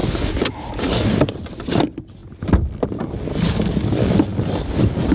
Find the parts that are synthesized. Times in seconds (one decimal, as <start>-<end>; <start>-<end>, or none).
0.5-2.2; 3.0-5.1